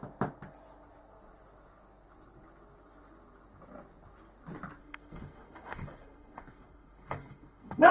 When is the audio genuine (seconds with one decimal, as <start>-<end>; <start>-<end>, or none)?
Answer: 0.0-4.8